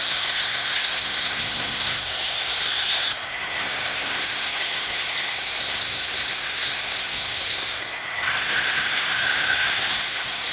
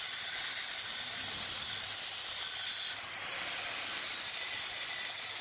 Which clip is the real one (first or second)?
second